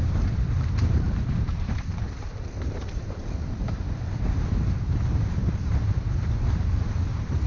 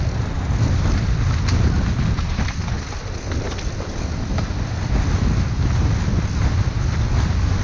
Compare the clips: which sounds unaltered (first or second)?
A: second